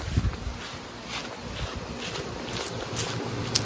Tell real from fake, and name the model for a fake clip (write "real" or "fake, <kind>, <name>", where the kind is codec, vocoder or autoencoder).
real